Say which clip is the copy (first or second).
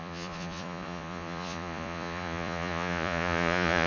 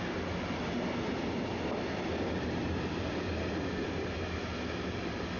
first